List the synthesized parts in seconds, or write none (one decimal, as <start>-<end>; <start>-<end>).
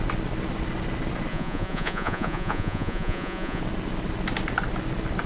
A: 1.3-3.6